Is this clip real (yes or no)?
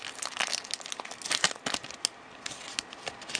yes